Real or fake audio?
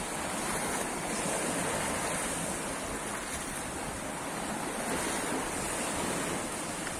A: real